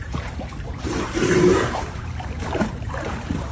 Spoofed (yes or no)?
yes